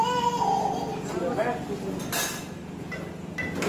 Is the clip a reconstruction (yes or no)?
no